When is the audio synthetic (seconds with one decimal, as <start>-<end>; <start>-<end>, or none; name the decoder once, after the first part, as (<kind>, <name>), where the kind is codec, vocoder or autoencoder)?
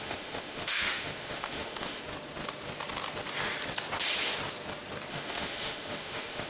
0.0-2.0 (autoencoder, DAC-VAE); 5.1-6.5